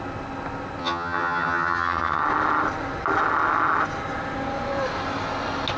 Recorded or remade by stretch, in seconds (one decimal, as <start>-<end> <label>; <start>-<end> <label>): 0.0-0.8 recorded; 0.8-2.2 remade; 2.2-5.8 recorded